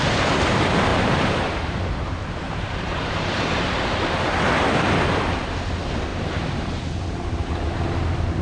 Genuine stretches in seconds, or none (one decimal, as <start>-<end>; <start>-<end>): 0.0-0.9; 4.4-6.1; 7.9-8.4